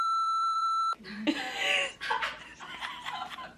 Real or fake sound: fake